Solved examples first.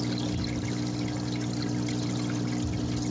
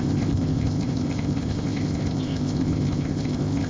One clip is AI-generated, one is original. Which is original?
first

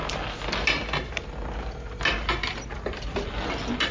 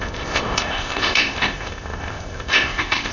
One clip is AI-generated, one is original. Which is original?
first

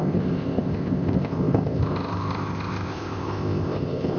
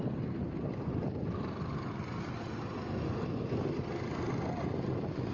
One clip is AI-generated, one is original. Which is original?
second